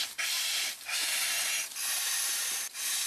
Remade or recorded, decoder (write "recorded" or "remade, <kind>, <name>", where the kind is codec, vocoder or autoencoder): remade, vocoder, BigVGAN v2